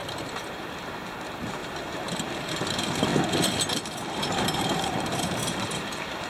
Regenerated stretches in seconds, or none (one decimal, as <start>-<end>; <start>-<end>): 0.0-3.1; 4.1-6.3